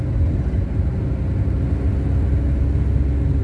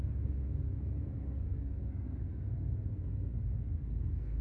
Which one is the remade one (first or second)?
second